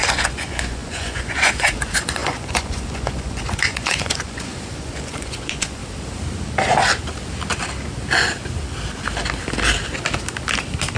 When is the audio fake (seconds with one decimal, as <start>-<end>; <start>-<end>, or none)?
0.0-5.8